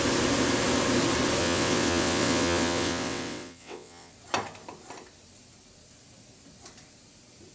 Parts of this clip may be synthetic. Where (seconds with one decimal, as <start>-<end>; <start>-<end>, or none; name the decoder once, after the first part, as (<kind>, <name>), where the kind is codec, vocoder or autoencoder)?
1.4-4.1 (vocoder, WaveNeXt)